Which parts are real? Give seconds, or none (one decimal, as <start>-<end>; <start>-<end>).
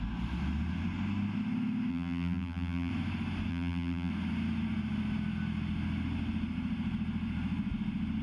0.0-1.9; 2.9-3.5; 4.1-8.2